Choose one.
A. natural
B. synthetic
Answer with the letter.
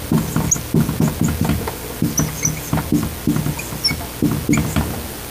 A